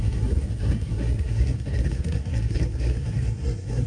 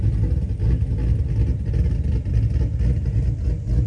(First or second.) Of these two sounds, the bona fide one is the second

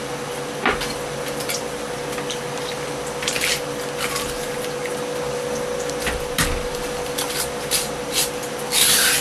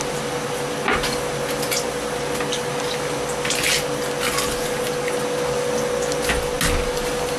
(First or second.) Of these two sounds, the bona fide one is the second